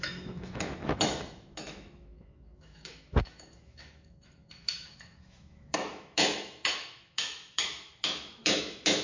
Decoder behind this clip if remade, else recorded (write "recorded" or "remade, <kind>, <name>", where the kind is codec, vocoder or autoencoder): remade, autoencoder, DAC-VAE